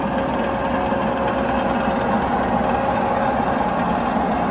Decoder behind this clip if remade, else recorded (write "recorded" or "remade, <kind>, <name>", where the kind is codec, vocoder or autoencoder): recorded